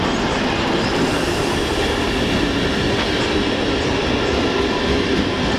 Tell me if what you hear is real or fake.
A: real